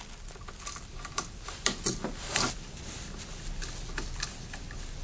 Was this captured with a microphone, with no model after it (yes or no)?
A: yes